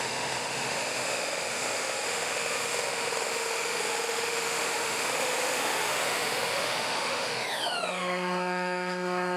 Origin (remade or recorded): remade